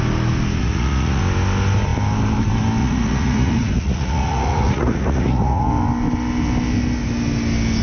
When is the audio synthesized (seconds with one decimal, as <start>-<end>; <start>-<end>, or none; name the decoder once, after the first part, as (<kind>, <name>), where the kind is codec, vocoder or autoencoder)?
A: 0.6-1.2 (vocoder, Vocos); 2.8-5.7